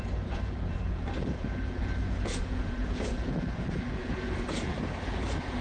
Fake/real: fake